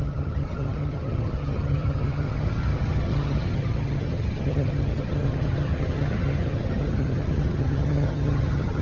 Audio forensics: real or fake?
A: fake